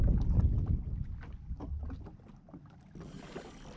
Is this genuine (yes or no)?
yes